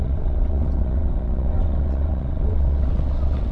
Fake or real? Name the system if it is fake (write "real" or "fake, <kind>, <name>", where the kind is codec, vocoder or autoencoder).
fake, vocoder, WaveNeXt